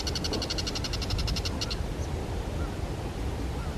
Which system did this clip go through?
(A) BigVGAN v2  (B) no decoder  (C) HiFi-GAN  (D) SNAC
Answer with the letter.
B